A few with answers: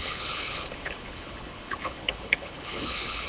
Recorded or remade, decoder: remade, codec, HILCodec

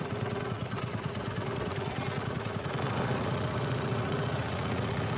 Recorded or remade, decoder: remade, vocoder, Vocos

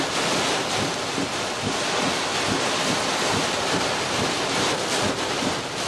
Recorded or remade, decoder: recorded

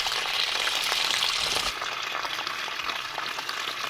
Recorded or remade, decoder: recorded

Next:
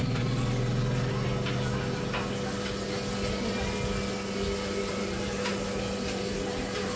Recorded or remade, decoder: recorded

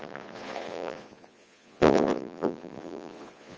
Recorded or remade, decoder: remade, vocoder, Vocos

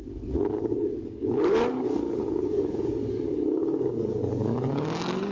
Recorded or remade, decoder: remade, codec, DAC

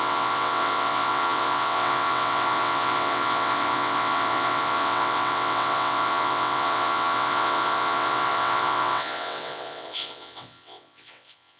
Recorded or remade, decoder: remade, vocoder, WaveNeXt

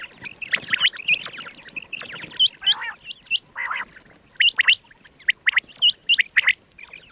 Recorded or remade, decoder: recorded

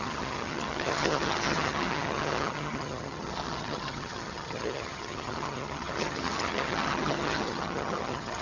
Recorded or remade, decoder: remade, vocoder, HiFi-GAN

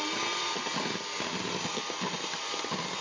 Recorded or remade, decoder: recorded